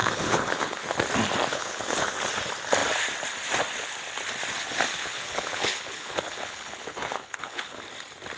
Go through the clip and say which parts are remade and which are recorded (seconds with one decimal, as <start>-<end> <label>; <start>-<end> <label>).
0.0-0.8 remade; 0.8-1.5 recorded; 1.5-2.1 remade; 2.1-5.0 recorded; 5.0-7.8 remade; 7.8-8.4 recorded

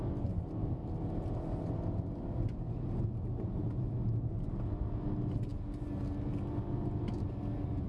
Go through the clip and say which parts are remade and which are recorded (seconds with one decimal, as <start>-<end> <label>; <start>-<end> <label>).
0.0-7.9 recorded

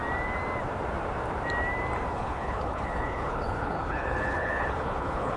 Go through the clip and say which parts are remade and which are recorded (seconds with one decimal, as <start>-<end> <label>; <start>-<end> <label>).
0.0-2.1 recorded; 2.1-5.4 remade